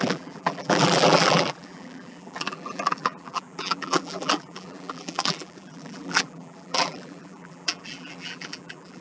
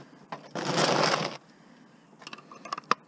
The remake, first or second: first